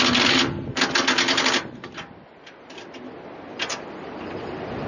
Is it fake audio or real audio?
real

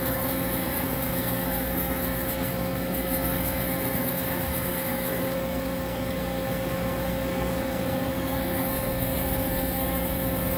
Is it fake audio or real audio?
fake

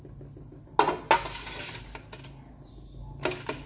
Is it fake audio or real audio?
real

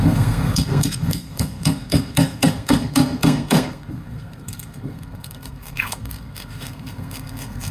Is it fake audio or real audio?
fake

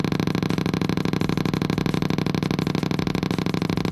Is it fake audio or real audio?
real